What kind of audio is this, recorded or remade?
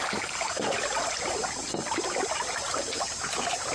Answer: recorded